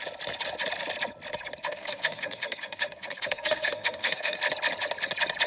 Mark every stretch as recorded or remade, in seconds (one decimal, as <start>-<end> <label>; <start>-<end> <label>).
0.0-1.6 recorded; 1.6-4.4 remade; 4.4-5.5 recorded